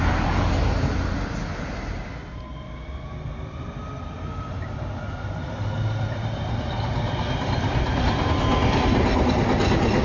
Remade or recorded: recorded